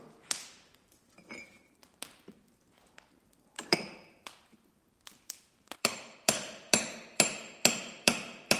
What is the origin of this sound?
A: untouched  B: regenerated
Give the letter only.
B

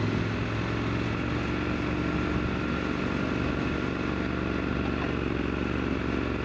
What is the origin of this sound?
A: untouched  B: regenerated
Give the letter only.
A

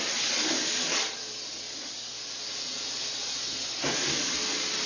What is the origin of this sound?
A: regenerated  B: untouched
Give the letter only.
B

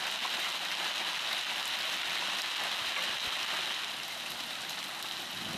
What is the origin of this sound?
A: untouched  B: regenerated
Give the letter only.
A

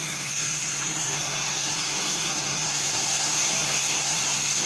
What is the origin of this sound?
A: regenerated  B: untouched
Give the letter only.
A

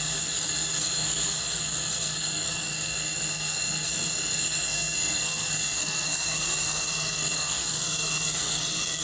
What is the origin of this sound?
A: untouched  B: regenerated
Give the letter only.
B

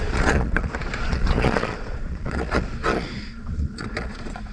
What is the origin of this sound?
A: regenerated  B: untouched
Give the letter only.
A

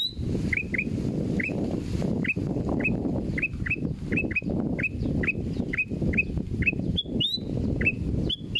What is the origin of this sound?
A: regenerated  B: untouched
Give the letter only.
B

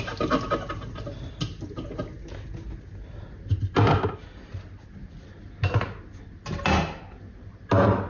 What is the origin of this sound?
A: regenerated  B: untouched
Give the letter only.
B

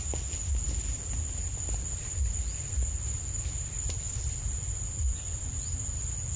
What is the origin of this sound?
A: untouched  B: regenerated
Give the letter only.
A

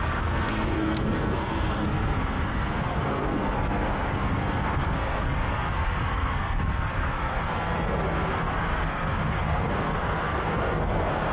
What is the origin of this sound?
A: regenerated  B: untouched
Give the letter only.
A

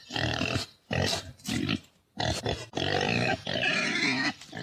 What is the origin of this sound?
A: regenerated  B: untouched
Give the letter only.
B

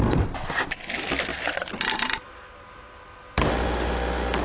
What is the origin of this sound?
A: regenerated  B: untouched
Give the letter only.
B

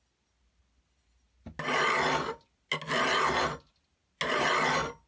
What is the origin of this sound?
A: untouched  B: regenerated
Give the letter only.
A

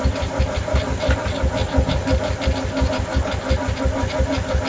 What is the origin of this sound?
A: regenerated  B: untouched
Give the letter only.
B